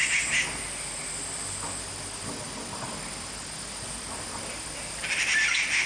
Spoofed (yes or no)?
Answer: no